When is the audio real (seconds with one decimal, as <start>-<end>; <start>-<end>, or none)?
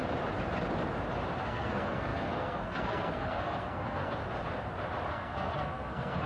0.0-1.4; 4.2-5.1